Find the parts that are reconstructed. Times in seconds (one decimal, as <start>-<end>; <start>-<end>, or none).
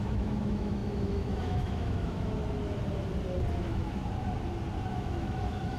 0.0-2.4; 3.5-4.0; 4.9-5.8